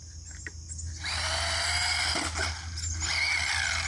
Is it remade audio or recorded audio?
recorded